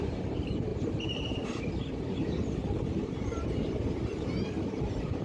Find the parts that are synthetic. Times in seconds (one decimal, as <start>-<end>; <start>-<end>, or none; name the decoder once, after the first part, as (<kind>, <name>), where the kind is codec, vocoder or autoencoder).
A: 0.0-5.2 (vocoder, BigVGAN v2)